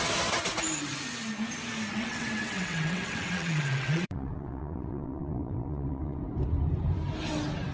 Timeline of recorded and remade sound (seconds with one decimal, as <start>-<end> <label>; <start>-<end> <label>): 0.0-1.9 recorded; 1.9-6.2 remade; 6.2-7.7 recorded